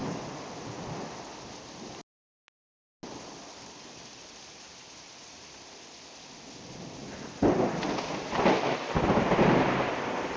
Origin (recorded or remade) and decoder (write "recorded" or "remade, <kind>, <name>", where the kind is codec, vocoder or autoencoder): recorded